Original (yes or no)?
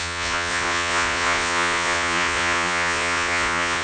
no